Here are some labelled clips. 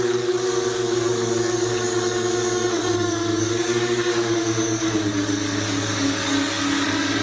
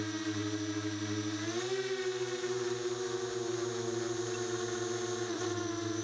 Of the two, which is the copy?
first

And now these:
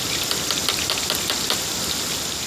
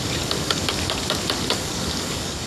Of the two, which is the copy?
second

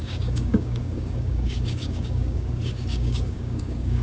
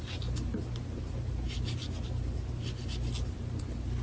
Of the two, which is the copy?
first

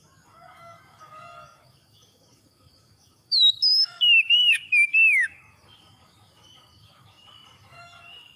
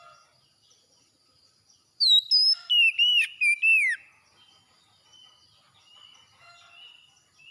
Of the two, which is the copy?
first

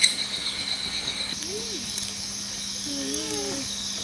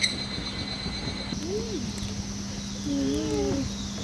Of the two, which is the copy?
first